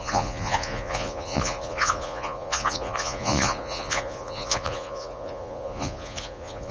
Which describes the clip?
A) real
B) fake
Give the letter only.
B